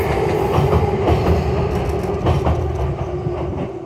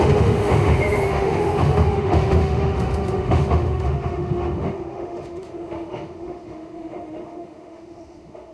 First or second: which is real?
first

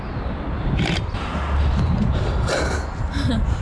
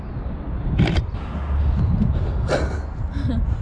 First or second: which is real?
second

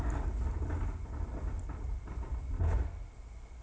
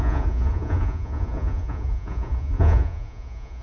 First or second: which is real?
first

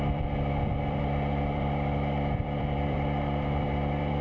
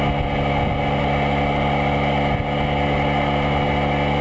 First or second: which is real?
second